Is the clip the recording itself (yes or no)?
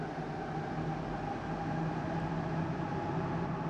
yes